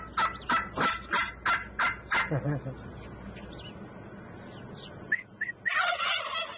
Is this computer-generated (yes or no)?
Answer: no